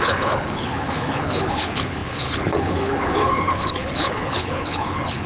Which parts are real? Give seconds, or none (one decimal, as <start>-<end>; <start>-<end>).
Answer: none